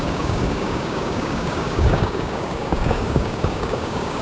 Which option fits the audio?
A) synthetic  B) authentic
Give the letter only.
A